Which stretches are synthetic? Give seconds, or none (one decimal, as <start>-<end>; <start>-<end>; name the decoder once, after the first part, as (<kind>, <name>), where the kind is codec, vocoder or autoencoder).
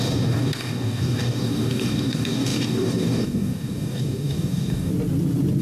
0.0-4.9 (codec, DAC)